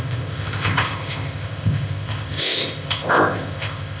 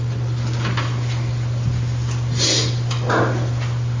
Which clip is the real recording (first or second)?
second